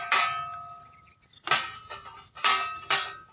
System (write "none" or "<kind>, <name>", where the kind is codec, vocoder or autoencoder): none